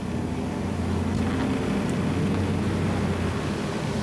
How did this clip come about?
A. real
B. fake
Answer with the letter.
A